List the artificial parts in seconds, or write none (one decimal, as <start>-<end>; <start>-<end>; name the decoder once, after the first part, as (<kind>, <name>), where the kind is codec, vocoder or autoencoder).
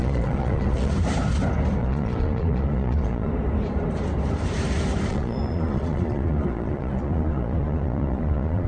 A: 0.0-0.9 (vocoder, Vocos); 1.8-3.3; 5.1-8.7